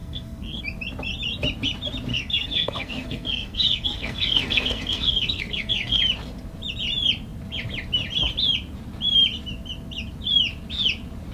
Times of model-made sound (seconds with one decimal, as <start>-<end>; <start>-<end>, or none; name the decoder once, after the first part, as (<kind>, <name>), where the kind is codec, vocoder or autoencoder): 0.0-0.6 (codec, SNAC); 2.1-6.0